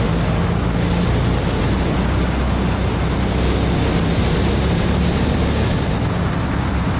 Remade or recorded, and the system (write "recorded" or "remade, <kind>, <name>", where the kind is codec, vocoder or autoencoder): recorded